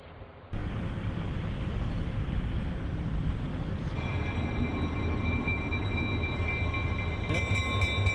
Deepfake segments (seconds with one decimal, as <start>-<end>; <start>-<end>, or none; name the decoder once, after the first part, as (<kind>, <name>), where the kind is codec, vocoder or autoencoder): none

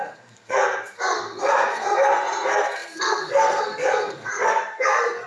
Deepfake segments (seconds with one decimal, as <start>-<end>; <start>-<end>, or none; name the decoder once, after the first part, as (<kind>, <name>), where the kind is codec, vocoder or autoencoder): 0.0-5.3 (codec, SNAC)

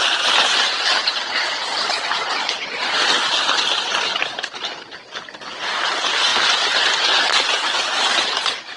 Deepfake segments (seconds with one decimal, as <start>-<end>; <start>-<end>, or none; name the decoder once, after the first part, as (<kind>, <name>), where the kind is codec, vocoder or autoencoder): none